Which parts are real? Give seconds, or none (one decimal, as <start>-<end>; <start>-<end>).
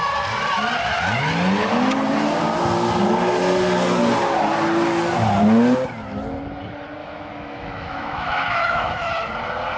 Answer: 0.0-7.0; 9.1-9.8